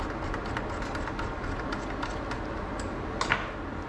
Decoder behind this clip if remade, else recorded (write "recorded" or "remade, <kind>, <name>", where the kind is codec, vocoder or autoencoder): recorded